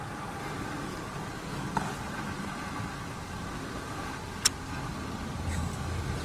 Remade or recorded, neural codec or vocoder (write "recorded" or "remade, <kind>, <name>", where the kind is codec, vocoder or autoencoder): recorded